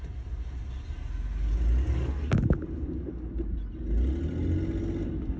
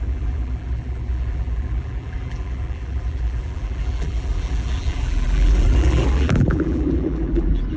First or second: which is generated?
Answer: second